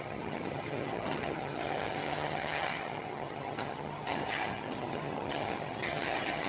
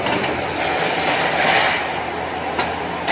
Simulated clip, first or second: first